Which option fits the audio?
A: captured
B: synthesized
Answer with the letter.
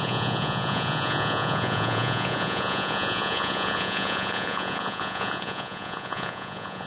B